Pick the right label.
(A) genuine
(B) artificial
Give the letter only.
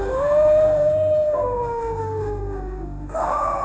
B